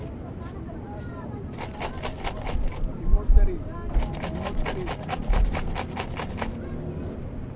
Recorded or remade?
recorded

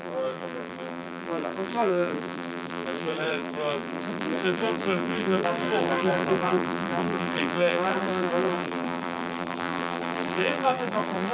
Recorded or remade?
remade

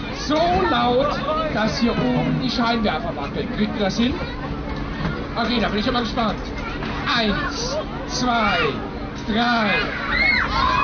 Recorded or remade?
recorded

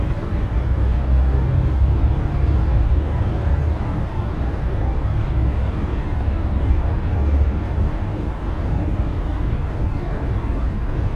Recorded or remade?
remade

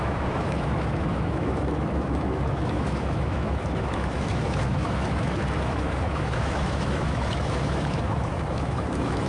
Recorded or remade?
remade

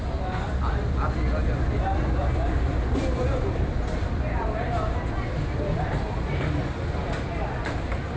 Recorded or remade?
recorded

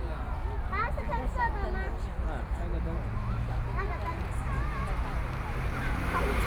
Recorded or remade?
recorded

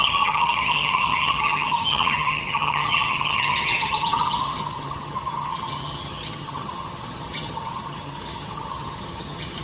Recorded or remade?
remade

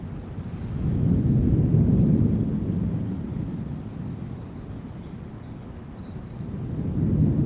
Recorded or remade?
recorded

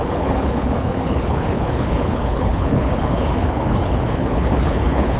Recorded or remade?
remade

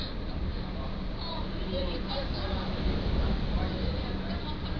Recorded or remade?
recorded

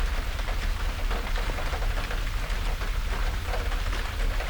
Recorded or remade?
recorded